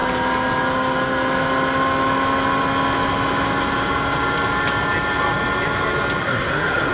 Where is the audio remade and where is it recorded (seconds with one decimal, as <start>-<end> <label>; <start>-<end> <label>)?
0.0-6.2 recorded; 6.2-6.9 remade